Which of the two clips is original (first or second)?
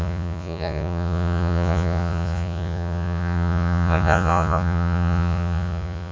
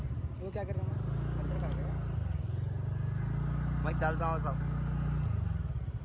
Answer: second